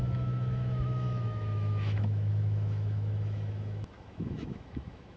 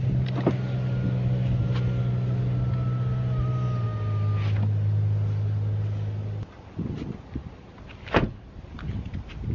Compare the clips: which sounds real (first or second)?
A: second